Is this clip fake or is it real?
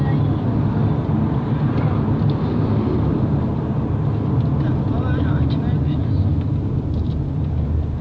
real